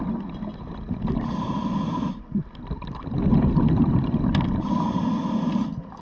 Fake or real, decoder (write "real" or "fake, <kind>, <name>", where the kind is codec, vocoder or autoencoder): real